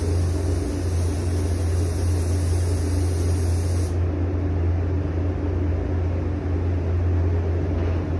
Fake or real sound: real